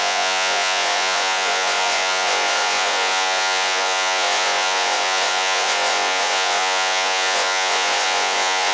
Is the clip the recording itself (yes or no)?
no